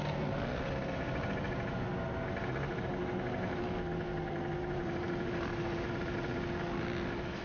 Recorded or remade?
recorded